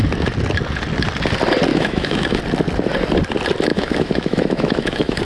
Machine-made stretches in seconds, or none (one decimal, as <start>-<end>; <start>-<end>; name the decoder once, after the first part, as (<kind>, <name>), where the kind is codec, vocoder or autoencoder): 1.7-2.4 (autoencoder, DAC-VAE); 3.7-5.2